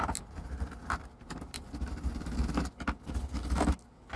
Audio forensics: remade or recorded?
recorded